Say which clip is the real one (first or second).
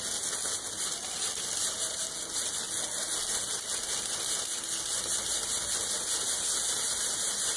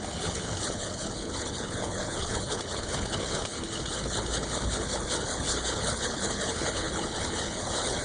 first